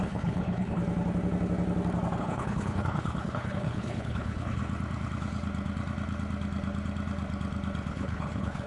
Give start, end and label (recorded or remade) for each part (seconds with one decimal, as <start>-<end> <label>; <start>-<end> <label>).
0.0-0.8 remade; 0.8-2.2 recorded; 2.2-4.6 remade; 4.6-7.9 recorded; 7.9-8.7 remade